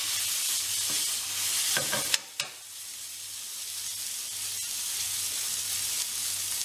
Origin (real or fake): real